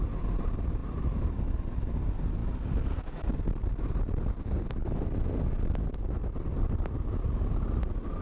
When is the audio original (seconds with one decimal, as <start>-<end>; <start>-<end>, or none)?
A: 0.0-8.2